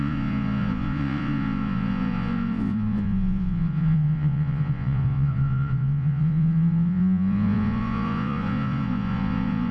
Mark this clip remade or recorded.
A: remade